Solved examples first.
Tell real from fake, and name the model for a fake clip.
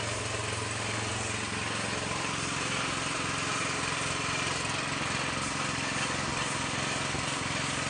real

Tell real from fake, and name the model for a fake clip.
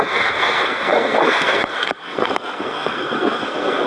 fake, codec, SNAC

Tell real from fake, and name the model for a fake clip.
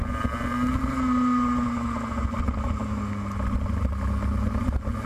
real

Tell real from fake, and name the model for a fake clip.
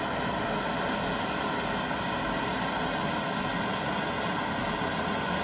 real